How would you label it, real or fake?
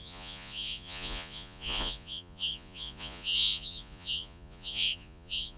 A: fake